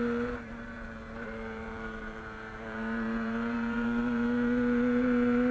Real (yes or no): no